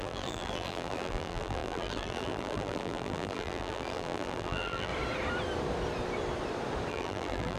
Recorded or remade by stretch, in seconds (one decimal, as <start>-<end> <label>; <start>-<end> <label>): 0.0-4.9 remade; 4.9-6.9 recorded; 6.9-7.6 remade